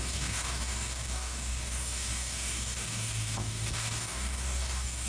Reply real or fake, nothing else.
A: fake